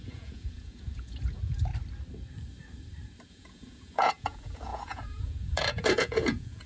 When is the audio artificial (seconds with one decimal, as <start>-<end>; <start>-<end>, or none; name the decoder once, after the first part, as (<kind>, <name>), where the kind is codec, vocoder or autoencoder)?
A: 0.0-1.7 (vocoder, Vocos); 3.3-6.7